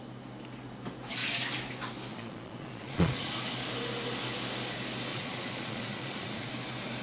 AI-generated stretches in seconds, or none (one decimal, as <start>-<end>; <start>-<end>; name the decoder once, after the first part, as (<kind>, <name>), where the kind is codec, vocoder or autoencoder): 2.1-3.3 (vocoder, Vocos); 5.1-6.5